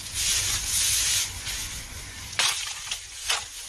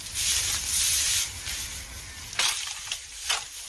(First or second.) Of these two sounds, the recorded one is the second